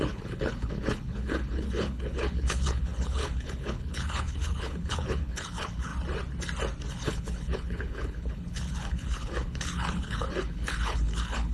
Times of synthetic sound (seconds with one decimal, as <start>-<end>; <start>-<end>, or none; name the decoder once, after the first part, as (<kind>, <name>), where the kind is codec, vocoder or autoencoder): 0.0-5.9 (codec, HILCodec); 6.9-11.5